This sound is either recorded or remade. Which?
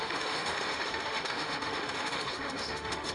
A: remade